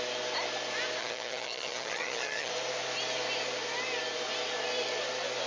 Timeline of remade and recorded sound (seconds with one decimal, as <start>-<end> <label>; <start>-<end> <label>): 0.0-1.0 recorded; 1.0-2.5 remade; 2.5-5.5 recorded